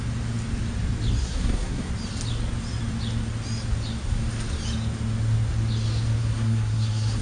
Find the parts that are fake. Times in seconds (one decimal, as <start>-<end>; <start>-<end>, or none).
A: 1.2-1.9; 6.2-7.2